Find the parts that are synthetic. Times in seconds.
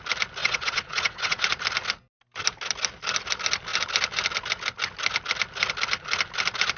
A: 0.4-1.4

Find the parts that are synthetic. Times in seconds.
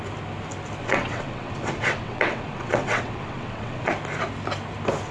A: 0.8-3.9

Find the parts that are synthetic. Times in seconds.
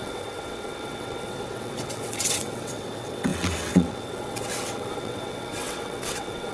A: 0.0-6.5